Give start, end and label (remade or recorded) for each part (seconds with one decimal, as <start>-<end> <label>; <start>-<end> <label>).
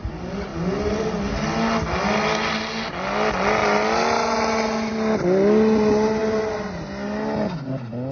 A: 0.0-8.1 recorded